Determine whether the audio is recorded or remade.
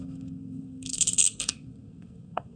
remade